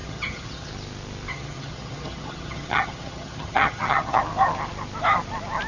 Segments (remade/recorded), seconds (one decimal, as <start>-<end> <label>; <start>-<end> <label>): 0.0-0.7 remade; 0.7-1.3 recorded; 1.3-4.2 remade; 4.2-5.7 recorded